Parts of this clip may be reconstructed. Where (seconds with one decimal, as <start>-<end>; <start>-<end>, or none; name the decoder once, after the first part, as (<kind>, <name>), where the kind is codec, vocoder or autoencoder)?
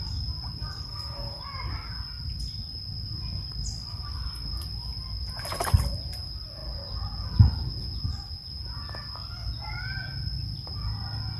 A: 0.9-1.4 (codec, SNAC)